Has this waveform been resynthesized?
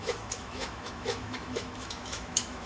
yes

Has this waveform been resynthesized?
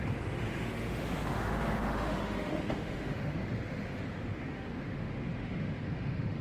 yes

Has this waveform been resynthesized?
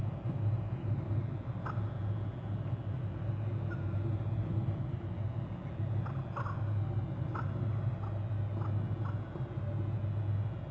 no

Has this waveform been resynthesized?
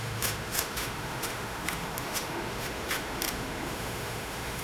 yes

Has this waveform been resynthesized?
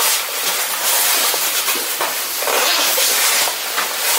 no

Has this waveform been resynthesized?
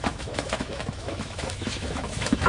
yes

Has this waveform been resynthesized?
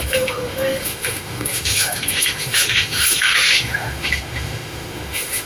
yes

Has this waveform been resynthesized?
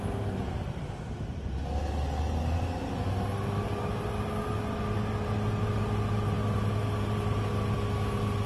no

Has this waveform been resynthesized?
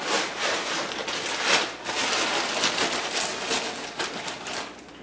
no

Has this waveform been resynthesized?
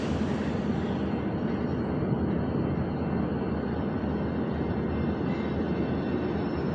no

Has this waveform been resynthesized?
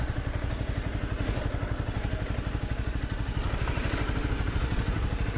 no